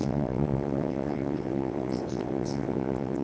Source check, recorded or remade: remade